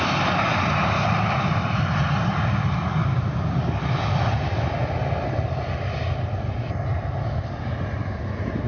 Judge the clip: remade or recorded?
recorded